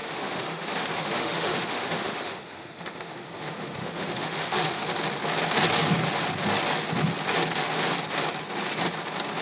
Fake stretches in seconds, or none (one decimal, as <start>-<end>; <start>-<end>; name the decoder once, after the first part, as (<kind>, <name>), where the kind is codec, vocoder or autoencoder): 0.0-4.8 (autoencoder, DAC-VAE)